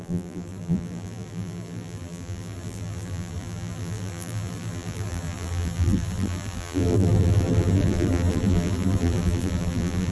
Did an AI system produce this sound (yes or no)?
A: yes